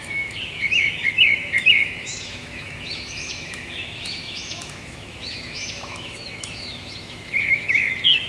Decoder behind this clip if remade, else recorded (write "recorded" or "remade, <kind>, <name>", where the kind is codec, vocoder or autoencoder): remade, autoencoder, DAC-VAE